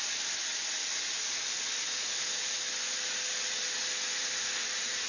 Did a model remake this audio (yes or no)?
no